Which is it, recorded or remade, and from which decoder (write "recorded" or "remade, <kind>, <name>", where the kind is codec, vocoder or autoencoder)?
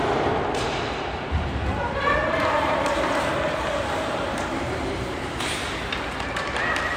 remade, vocoder, BigVGAN v2